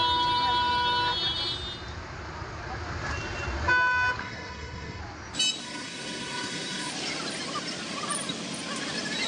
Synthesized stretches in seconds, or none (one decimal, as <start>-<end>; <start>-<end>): 4.2-5.0; 5.6-6.9